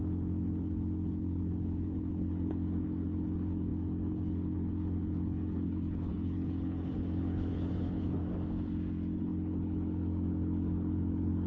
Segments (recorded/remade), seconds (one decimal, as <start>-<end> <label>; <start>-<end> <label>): 0.0-8.2 remade; 8.2-9.2 recorded; 9.2-11.5 remade